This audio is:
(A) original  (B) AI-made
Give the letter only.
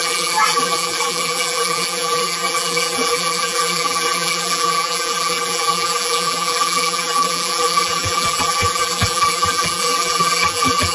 B